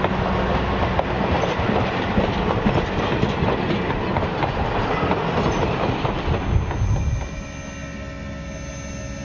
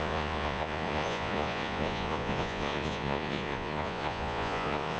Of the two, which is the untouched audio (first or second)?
first